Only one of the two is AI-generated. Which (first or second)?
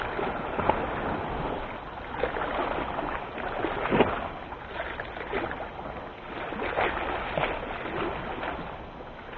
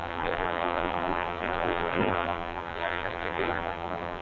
second